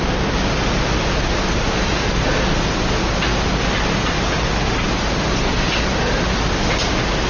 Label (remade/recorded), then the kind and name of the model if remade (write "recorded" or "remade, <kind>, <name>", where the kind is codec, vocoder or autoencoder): recorded